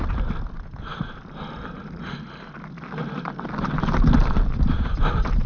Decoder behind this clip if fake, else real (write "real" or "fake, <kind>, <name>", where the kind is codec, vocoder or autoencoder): real